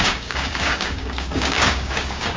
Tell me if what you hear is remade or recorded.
remade